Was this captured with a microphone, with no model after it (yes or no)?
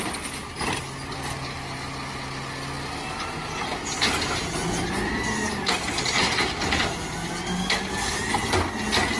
yes